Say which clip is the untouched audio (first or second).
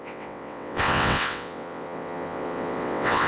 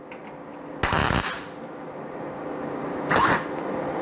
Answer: second